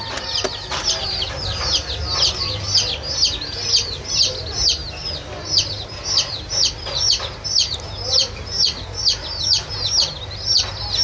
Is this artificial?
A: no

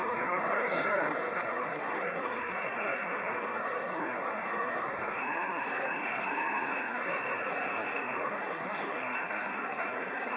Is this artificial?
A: yes